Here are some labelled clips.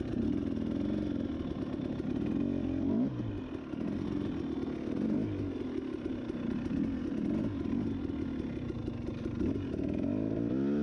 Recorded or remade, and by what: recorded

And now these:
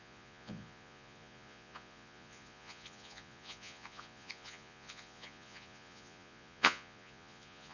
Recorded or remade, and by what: remade, vocoder, Vocos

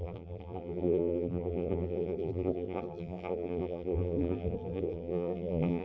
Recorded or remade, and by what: remade, vocoder, BigVGAN v2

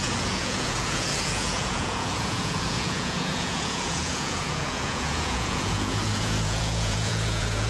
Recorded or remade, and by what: remade, vocoder, Vocos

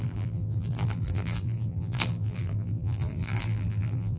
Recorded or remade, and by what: remade, vocoder, BigVGAN v2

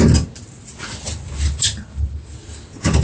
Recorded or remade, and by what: recorded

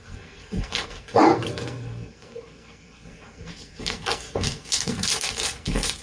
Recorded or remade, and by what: remade, codec, SNAC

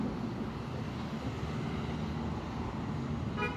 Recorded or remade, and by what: recorded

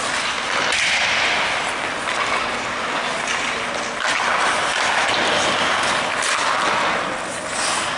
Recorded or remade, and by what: recorded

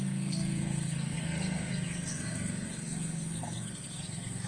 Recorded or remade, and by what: remade, codec, SNAC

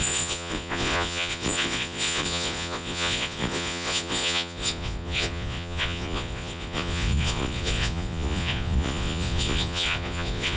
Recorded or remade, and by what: remade, vocoder, Vocos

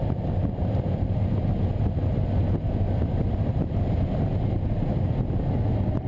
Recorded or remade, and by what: recorded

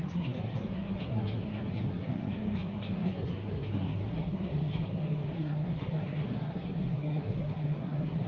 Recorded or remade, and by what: remade, codec, SNAC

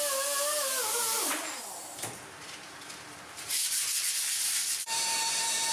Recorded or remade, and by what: remade, vocoder, BigVGAN v2